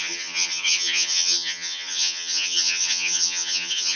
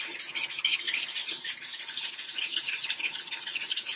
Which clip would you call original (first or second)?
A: second